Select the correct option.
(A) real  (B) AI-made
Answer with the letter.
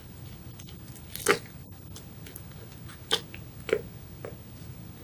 A